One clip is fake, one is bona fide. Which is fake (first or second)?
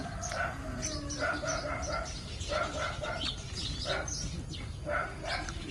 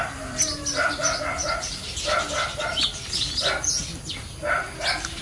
first